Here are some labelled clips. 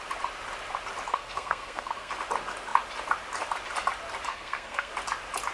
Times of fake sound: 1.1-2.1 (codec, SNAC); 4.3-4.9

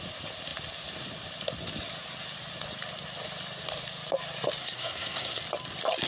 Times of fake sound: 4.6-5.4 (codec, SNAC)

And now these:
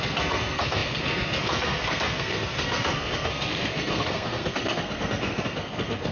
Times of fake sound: 0.0-6.1 (codec, SNAC)

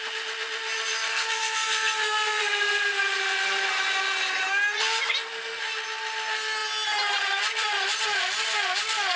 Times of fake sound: 1.1-2.8 (codec, SNAC)

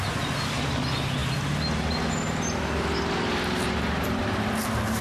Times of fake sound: none

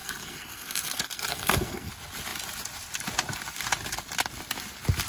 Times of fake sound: 0.0-1.9 (codec, SNAC)

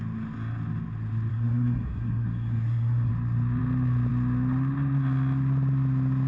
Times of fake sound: 1.3-3.1 (codec, SNAC)

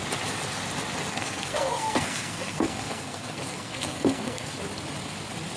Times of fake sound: 1.1-4.5 (codec, SNAC)